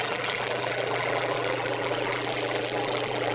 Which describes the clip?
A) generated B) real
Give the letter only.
A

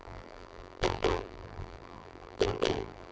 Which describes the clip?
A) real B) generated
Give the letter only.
B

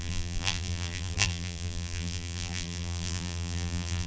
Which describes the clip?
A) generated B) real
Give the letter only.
A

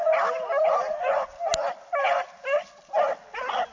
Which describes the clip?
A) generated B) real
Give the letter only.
B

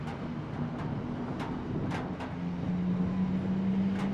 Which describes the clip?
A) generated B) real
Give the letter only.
B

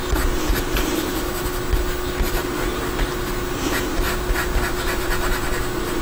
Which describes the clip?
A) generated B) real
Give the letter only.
B